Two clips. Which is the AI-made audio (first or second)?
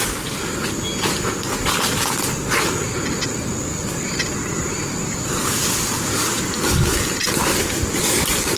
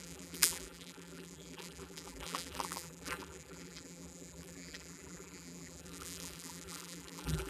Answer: second